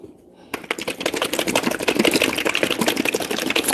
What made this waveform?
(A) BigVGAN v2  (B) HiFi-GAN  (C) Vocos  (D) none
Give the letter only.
D